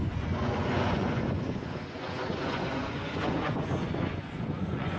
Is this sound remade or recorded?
remade